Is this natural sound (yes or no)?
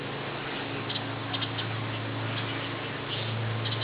yes